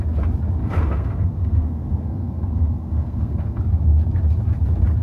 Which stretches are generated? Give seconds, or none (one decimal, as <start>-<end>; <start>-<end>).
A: 0.6-3.6